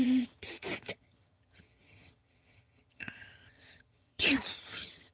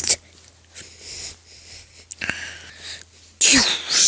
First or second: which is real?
second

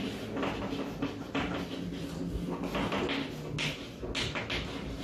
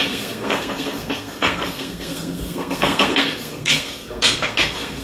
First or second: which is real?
first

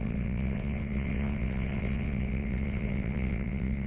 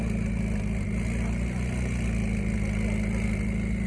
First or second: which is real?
second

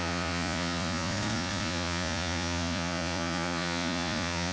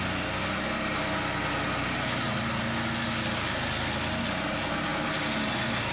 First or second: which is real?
second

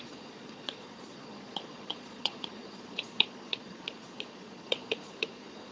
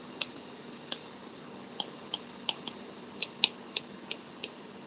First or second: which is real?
second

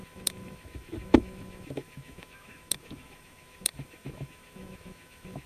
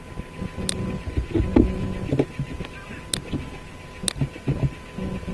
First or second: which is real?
second